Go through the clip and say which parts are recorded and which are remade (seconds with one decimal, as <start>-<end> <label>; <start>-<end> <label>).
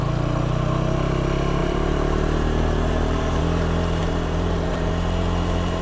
0.0-1.6 recorded; 1.6-3.4 remade; 3.4-4.0 recorded; 4.0-4.9 remade; 4.9-5.8 recorded